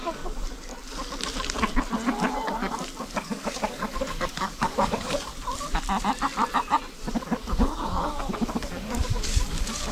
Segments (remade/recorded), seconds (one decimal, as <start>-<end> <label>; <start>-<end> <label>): 0.0-0.7 remade; 0.7-3.0 recorded; 3.0-5.3 remade; 5.3-7.1 recorded; 7.1-9.9 remade